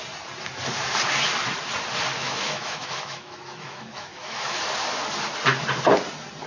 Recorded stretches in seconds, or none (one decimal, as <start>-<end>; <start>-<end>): 0.0-2.2; 4.6-6.5